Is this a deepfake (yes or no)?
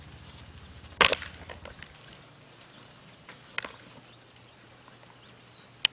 no